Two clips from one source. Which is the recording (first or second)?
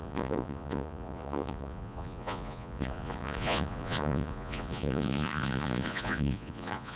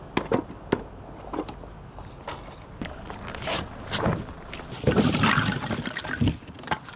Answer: second